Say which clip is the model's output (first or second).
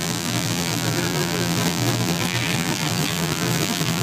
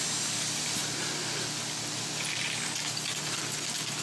first